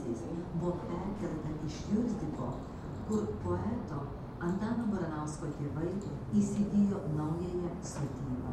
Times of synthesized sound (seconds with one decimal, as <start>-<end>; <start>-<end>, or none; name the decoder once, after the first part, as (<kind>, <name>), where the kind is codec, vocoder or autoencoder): none